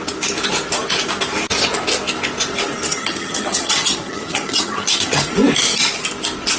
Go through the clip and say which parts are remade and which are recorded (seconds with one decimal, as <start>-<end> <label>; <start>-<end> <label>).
0.0-2.9 recorded; 2.9-5.3 remade; 5.3-6.6 recorded